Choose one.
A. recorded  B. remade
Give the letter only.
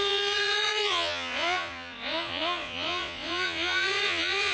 B